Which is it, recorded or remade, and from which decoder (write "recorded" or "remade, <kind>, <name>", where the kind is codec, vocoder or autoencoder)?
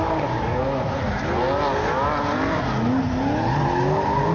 recorded